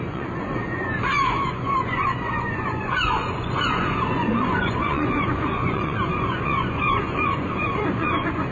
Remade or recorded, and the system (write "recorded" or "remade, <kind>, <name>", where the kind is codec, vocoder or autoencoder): remade, vocoder, Vocos